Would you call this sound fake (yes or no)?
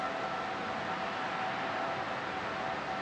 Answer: no